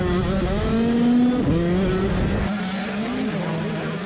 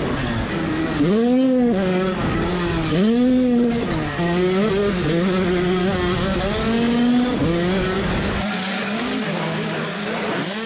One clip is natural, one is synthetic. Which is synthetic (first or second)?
second